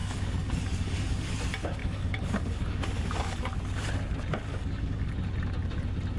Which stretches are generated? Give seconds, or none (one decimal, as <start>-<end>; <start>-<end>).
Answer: 0.0-1.3; 1.8-3.5; 4.5-5.1